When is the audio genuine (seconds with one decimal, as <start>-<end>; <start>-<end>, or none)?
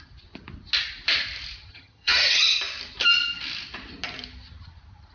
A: 0.0-1.7; 2.6-5.1